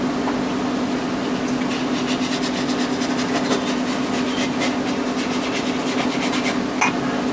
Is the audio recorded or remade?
recorded